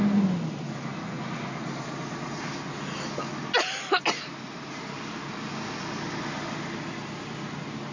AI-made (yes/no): no